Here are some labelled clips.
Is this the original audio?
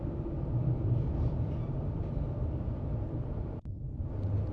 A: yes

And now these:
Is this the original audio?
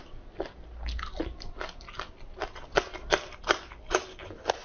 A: yes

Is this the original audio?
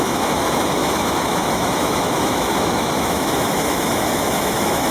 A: no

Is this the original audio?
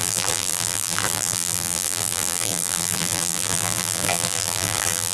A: no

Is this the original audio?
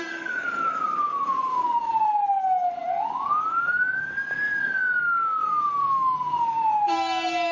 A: no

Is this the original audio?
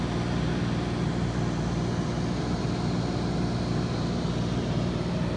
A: yes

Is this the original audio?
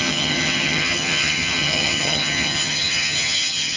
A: no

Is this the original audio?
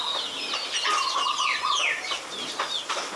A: yes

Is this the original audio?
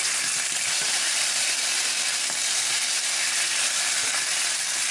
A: yes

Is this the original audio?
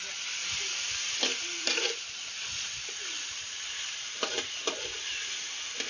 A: yes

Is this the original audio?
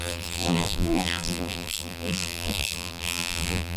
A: no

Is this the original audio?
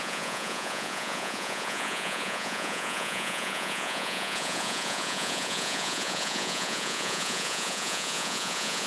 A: no